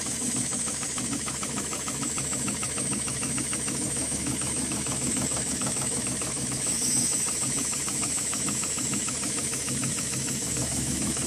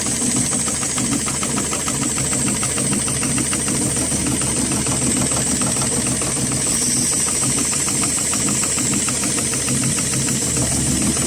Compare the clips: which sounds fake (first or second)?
first